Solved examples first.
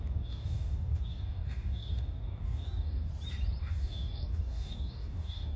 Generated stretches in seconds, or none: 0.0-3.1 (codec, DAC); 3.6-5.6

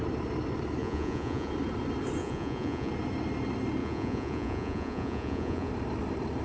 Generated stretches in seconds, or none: 0.8-1.5 (vocoder, Vocos); 2.2-2.9; 3.8-5.7

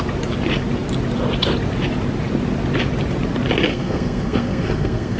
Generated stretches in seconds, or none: 3.7-5.2 (codec, SNAC)